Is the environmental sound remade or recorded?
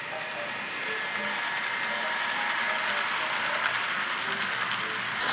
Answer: recorded